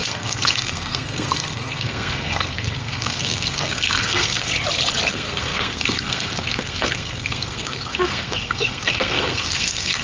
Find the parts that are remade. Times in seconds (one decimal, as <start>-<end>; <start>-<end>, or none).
0.0-4.5; 5.1-10.0